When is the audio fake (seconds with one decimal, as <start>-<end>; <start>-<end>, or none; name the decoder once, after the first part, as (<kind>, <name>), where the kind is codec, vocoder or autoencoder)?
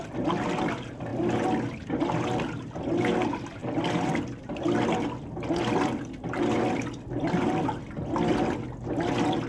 none